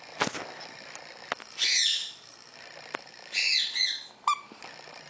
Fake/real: real